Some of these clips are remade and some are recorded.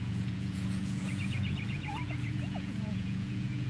remade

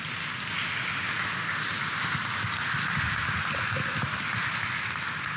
recorded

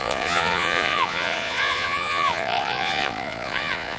remade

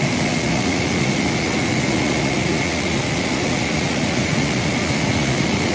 remade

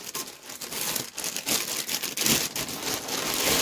recorded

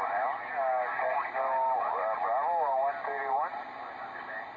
recorded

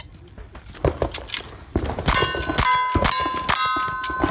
recorded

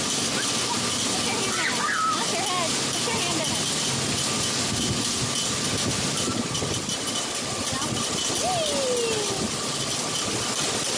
recorded